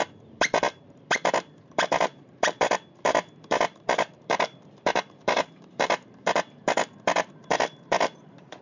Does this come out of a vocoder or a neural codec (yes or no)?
yes